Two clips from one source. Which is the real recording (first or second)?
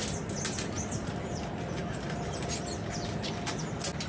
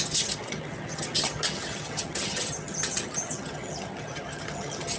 first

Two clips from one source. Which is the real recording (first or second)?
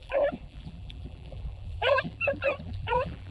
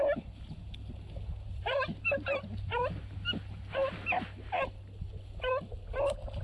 second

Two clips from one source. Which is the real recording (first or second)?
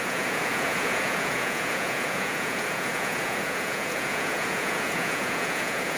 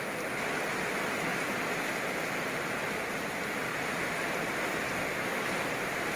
second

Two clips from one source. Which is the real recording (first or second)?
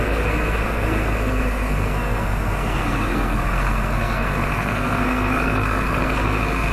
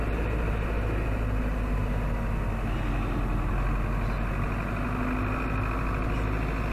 second